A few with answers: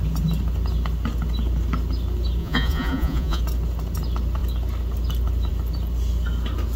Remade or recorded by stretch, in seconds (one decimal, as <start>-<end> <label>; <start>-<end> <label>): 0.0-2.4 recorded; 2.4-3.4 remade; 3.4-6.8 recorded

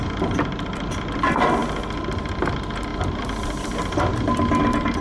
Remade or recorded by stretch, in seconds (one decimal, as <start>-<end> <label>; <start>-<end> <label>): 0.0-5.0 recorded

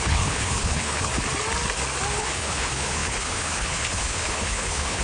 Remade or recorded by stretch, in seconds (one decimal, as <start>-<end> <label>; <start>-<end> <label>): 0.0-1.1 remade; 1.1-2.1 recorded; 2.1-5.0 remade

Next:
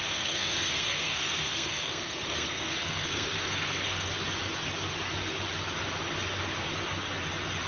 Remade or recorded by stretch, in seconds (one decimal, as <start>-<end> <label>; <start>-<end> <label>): 0.0-4.1 remade; 4.1-7.7 recorded